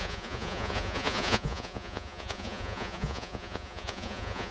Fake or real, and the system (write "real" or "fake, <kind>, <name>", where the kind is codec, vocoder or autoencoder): fake, vocoder, Vocos